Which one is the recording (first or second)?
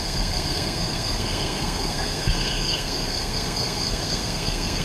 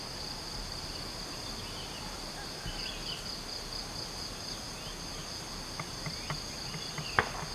second